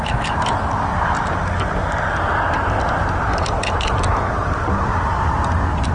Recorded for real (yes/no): yes